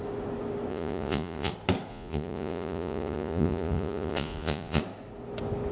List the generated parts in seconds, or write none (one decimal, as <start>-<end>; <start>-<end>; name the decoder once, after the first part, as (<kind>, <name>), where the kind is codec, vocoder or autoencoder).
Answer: 0.7-1.5 (vocoder, Vocos); 1.9-4.8